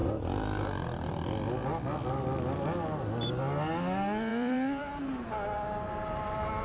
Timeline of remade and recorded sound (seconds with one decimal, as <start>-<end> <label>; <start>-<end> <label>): 0.0-4.3 recorded; 4.3-4.9 remade; 4.9-6.6 recorded